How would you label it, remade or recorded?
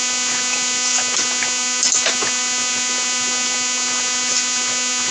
recorded